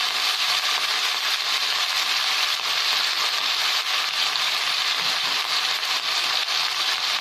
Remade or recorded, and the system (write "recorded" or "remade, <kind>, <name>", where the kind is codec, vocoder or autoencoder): remade, vocoder, BigVGAN v2